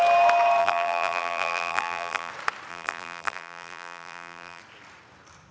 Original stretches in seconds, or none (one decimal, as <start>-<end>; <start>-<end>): 0.0-0.6; 2.3-2.7; 4.6-5.5